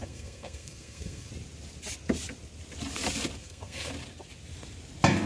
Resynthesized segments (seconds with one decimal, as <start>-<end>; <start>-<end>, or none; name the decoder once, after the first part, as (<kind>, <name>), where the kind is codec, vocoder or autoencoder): 0.0-1.3 (codec, SNAC); 3.4-3.9